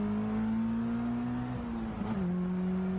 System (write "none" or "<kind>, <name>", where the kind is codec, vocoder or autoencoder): none